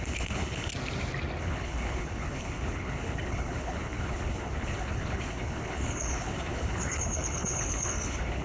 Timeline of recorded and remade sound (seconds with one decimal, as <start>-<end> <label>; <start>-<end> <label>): 0.0-0.7 remade; 0.7-1.4 recorded; 1.4-8.4 remade